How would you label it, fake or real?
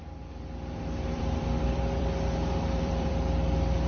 fake